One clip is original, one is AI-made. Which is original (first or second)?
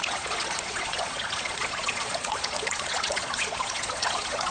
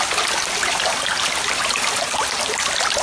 second